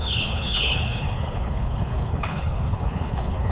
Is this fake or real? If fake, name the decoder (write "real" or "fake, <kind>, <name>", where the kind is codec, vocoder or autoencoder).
fake, codec, HILCodec